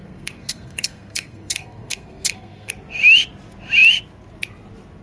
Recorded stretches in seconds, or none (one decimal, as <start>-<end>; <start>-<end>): 2.7-5.0